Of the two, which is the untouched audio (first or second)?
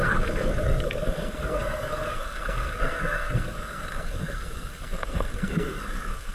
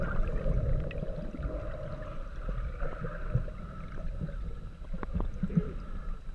second